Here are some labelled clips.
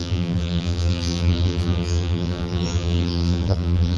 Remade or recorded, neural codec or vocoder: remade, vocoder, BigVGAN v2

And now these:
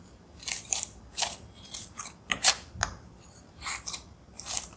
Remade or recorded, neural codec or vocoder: remade, vocoder, BigVGAN v2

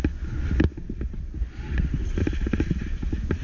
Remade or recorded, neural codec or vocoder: recorded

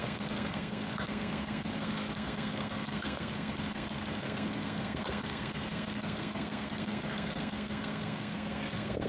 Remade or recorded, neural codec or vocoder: remade, codec, SNAC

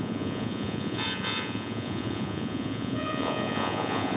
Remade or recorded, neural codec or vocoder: remade, vocoder, Vocos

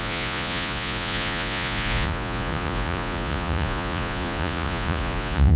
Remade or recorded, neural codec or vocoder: remade, vocoder, Vocos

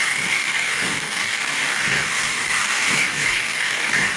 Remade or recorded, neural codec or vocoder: remade, codec, DAC